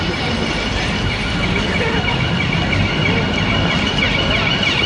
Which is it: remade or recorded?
recorded